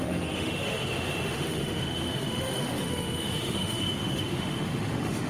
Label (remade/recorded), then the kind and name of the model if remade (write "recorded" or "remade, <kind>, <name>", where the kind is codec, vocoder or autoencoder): remade, autoencoder, DAC-VAE